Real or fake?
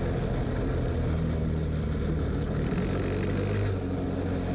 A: real